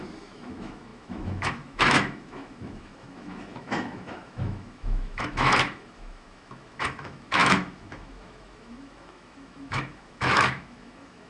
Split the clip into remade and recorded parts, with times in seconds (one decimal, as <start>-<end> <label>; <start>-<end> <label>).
0.0-11.3 remade